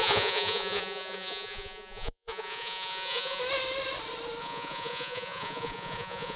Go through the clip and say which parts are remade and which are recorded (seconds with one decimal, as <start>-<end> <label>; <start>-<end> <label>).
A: 0.0-3.4 remade; 3.4-4.4 recorded; 4.4-6.4 remade